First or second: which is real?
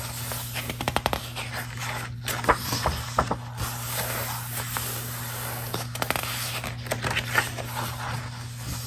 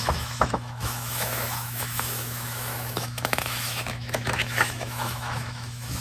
first